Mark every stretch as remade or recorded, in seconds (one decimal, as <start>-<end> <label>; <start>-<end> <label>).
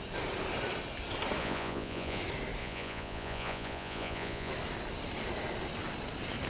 0.0-1.4 recorded; 1.4-2.2 remade; 2.2-2.6 recorded; 2.6-4.5 remade; 4.5-6.5 recorded